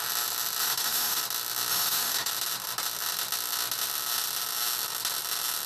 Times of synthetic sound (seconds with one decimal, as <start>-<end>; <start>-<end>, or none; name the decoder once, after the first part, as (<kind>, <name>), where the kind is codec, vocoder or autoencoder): 0.6-1.2 (autoencoder, DAC-VAE); 1.7-2.3